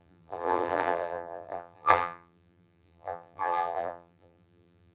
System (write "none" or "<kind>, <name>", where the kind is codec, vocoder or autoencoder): vocoder, BigVGAN v2